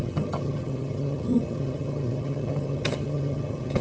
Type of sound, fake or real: fake